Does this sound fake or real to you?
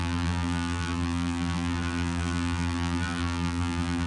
fake